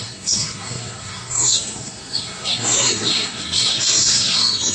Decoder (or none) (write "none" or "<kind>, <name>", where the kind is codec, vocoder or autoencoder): codec, SNAC